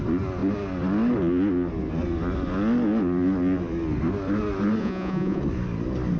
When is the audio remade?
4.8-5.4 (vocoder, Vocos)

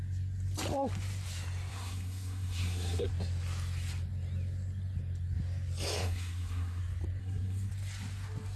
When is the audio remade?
1.7-3.1 (codec, SNAC); 6.0-6.8; 7.2-7.7

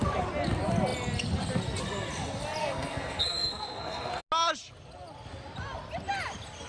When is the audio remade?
2.6-4.2 (codec, SNAC)